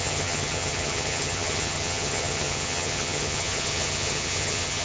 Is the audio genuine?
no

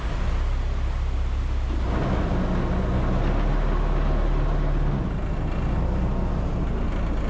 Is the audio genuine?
yes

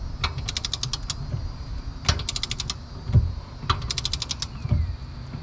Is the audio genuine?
yes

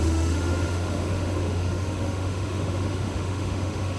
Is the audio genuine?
no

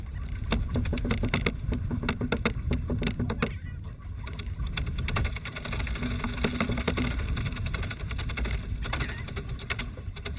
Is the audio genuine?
yes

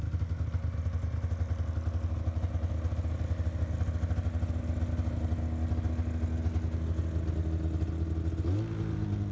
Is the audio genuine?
yes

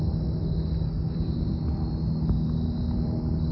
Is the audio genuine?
yes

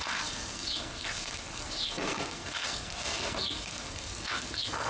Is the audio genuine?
no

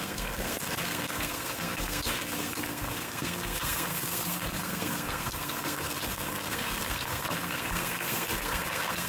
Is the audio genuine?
no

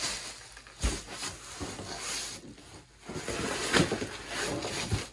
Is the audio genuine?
yes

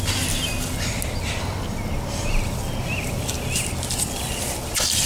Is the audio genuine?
yes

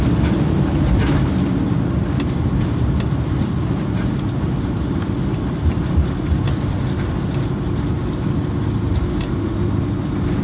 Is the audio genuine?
yes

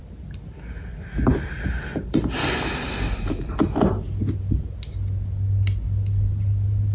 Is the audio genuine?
yes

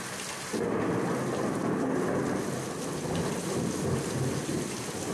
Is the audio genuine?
yes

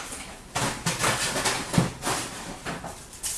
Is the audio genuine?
yes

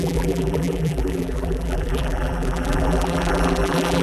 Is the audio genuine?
no